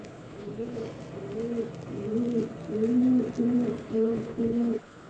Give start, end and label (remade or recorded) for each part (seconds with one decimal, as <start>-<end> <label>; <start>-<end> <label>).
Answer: 0.0-0.8 remade; 0.8-3.9 recorded; 3.9-5.1 remade